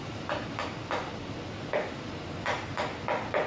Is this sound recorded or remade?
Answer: recorded